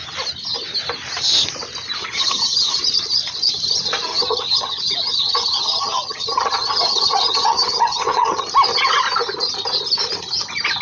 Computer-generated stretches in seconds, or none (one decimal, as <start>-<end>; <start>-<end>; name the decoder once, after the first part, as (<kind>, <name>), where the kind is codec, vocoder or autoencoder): 2.0-2.8 (vocoder, HiFi-GAN); 4.1-8.4